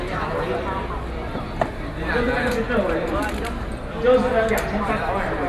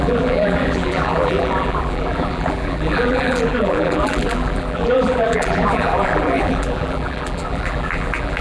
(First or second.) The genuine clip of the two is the first